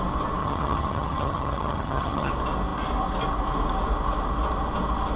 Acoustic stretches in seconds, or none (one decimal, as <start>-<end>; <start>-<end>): 0.0-0.4; 2.3-5.2